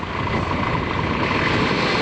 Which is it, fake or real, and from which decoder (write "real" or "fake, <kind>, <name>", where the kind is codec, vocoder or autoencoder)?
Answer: real